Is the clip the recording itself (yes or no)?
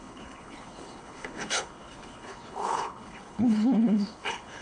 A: no